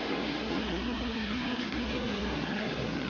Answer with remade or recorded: remade